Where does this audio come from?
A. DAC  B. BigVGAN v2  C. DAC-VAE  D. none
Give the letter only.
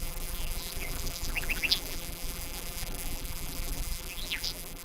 B